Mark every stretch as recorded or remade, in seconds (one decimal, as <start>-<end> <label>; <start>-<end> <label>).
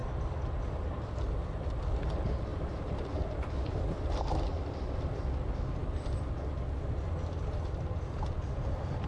0.0-2.5 recorded; 2.5-5.3 remade; 5.3-9.1 recorded